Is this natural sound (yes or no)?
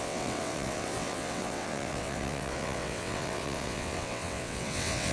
no